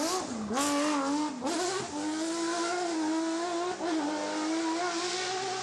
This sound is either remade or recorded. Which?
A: recorded